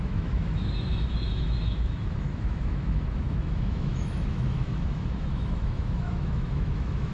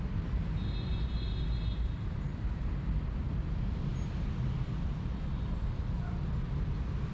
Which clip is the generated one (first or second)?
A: first